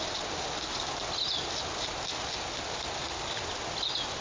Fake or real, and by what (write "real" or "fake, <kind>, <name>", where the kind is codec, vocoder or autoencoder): real